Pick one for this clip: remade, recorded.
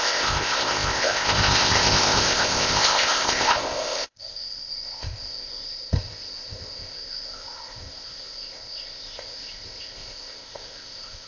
remade